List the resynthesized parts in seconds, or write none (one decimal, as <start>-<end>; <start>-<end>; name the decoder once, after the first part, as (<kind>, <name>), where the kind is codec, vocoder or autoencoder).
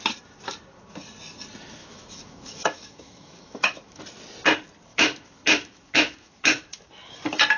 1.8-4.0 (autoencoder, DAC-VAE); 4.9-6.8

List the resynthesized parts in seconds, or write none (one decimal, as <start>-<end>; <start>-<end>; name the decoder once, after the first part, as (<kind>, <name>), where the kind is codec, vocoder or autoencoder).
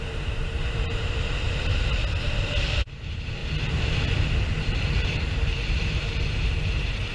0.0-2.0 (vocoder, BigVGAN v2); 3.0-3.4; 4.6-7.1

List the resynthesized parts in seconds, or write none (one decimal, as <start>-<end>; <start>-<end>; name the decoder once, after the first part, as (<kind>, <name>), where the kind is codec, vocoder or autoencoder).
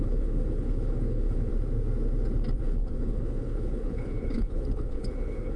0.0-1.5 (codec, HILCodec); 2.6-5.6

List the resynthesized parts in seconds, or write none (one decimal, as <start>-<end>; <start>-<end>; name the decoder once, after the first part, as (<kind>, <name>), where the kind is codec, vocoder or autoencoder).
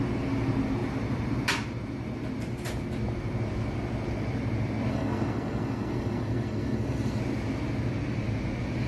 4.9-7.2 (codec, SNAC)